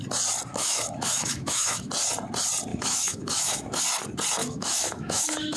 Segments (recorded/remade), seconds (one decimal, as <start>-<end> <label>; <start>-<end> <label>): 0.0-0.5 recorded; 0.5-1.9 remade; 1.9-2.7 recorded; 2.7-3.8 remade; 3.8-4.4 recorded; 4.4-5.6 remade